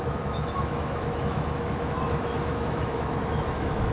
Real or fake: fake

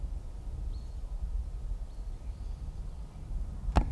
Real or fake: real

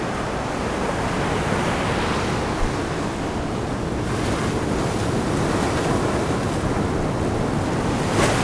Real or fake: real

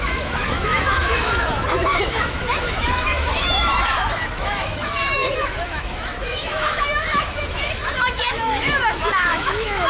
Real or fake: fake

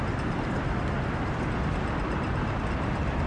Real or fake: real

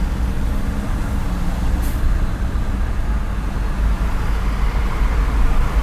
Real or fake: real